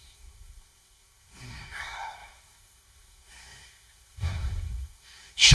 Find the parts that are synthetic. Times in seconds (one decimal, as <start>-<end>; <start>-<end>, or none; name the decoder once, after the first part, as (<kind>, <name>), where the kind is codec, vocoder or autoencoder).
0.0-5.5 (codec, SNAC)